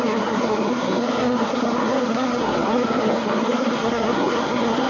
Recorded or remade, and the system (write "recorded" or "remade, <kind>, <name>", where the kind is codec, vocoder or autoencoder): remade, codec, SNAC